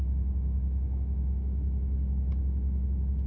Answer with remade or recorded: recorded